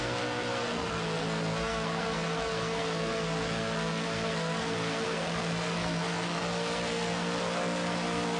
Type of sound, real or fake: fake